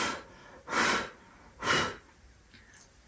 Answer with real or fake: real